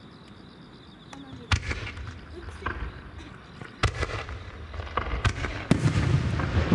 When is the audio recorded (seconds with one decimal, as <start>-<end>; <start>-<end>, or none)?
0.0-6.7